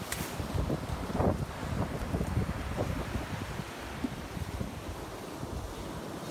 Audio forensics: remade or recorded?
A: remade